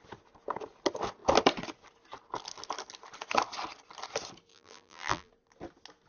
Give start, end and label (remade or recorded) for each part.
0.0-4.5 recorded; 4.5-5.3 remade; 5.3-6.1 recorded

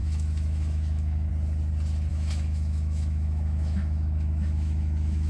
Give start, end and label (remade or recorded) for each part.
0.0-1.3 remade; 1.3-2.1 recorded; 2.1-5.3 remade

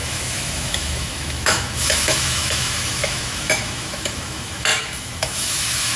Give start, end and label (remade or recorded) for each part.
0.0-6.0 remade